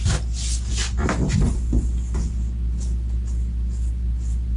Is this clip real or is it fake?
real